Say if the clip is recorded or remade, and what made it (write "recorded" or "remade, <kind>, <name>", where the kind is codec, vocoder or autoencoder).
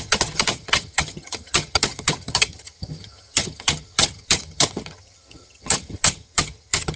remade, vocoder, HiFi-GAN